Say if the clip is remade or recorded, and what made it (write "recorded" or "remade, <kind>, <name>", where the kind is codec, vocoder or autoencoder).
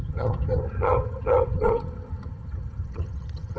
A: remade, vocoder, HiFi-GAN